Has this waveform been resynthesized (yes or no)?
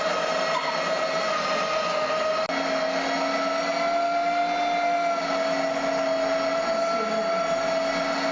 no